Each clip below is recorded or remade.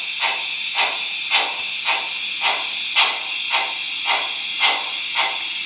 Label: recorded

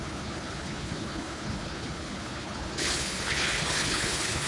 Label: remade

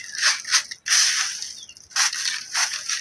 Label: recorded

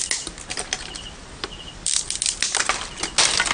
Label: recorded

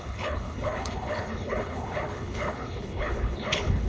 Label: remade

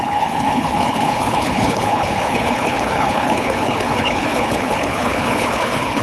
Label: remade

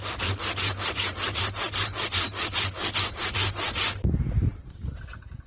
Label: recorded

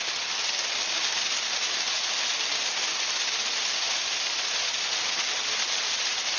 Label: recorded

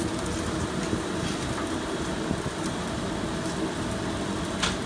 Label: recorded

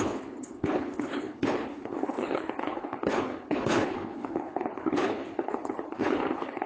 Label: remade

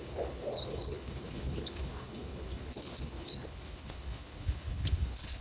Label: remade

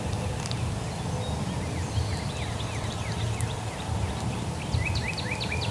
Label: recorded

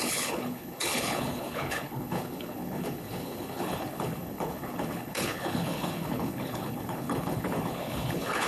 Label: remade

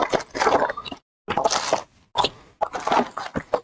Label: recorded